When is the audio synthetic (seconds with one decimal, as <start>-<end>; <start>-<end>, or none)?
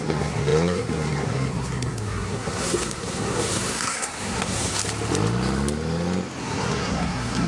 0.0-4.8; 6.4-7.5